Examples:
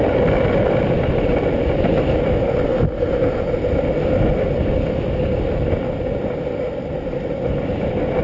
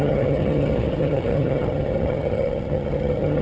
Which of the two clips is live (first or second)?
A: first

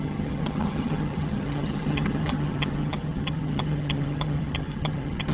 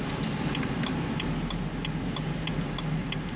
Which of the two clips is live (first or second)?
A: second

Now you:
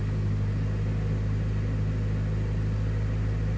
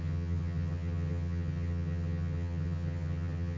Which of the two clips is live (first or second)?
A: first